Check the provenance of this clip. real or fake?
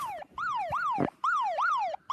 fake